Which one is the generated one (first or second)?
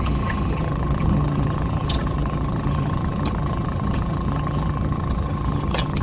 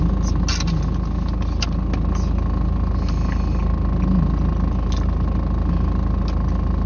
first